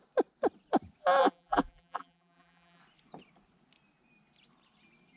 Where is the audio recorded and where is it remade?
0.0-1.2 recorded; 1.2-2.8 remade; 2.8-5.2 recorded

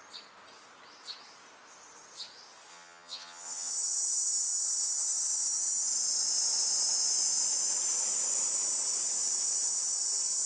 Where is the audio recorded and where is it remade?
0.0-2.7 recorded; 2.7-3.7 remade; 3.7-10.5 recorded

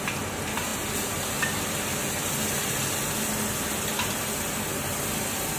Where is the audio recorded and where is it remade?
0.0-5.6 recorded

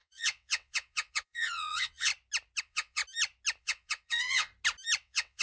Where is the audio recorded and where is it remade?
0.0-2.1 remade; 2.1-2.6 recorded; 2.6-3.0 remade; 3.0-3.6 recorded; 3.6-4.5 remade; 4.5-5.0 recorded; 5.0-5.4 remade